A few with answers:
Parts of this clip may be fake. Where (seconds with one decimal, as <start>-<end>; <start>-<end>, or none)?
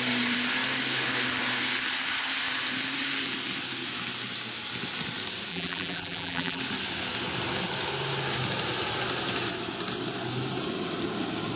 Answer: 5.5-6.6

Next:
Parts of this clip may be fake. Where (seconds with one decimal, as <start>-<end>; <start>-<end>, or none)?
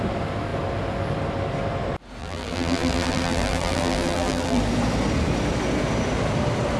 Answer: 2.2-4.6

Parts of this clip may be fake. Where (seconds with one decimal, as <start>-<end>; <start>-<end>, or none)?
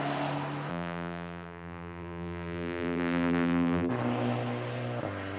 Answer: 0.7-3.9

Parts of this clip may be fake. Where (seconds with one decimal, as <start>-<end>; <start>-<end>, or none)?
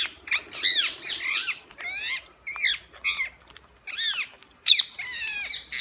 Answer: none